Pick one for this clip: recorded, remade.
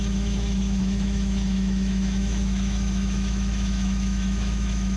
remade